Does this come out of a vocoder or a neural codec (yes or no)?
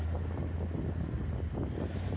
no